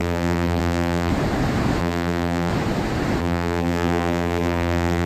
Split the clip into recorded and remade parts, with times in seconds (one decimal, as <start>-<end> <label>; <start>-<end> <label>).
0.0-1.1 remade; 1.1-1.8 recorded; 1.8-2.5 remade; 2.5-3.2 recorded; 3.2-5.1 remade